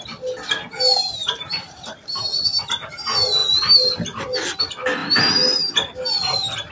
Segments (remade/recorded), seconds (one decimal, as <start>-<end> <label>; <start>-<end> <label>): 0.0-1.2 recorded; 1.2-2.4 remade; 2.4-6.7 recorded